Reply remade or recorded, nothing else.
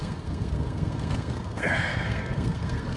remade